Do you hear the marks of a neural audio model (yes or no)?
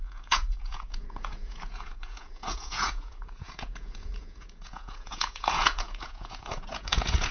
yes